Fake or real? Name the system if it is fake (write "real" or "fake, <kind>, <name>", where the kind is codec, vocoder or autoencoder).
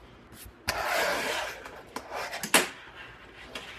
real